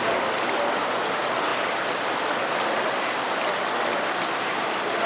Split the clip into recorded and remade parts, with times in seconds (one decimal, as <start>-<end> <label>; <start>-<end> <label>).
0.0-5.1 recorded